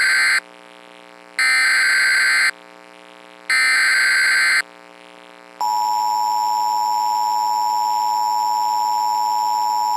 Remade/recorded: recorded